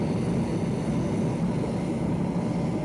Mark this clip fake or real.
real